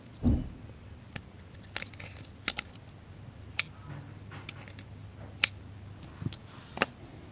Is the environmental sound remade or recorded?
recorded